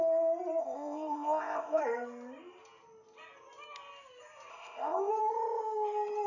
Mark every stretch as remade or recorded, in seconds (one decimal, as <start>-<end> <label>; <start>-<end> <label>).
0.0-0.6 recorded; 0.6-1.8 remade; 1.8-4.5 recorded; 4.5-5.1 remade; 5.1-6.3 recorded